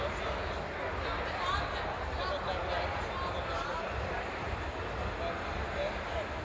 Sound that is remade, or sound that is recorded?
recorded